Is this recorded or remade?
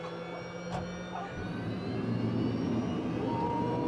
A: recorded